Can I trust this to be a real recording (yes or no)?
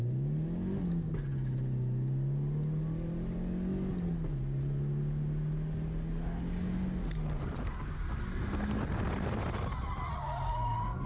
yes